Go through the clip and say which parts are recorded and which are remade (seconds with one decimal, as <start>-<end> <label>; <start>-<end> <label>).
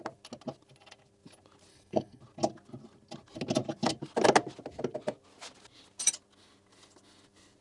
0.0-1.7 recorded; 1.7-2.2 remade; 2.2-7.6 recorded